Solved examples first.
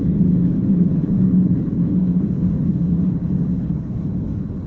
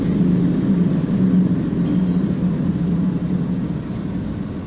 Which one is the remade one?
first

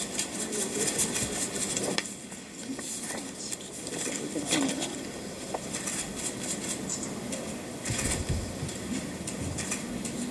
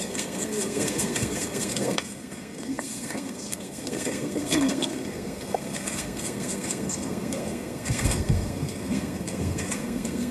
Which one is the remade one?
second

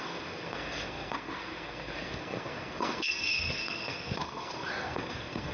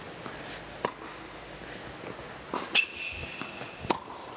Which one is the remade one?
first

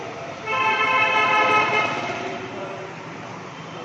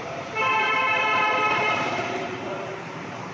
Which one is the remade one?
second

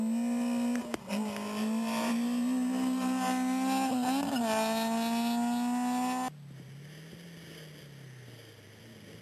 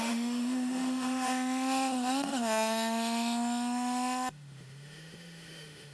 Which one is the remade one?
second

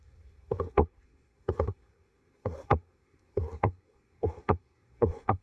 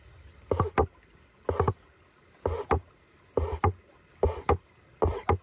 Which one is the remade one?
first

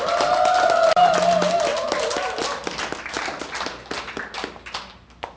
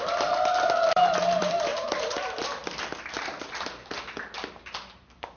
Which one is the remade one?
second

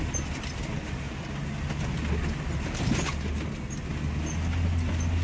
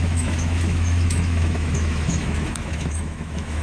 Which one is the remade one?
second